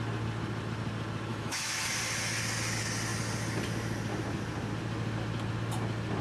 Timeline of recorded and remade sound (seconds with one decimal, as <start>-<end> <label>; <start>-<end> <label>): 0.0-1.3 recorded; 1.3-1.8 remade; 1.8-6.2 recorded